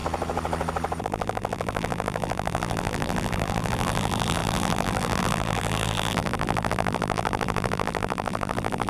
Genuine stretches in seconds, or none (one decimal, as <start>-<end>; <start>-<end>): 0.0-1.0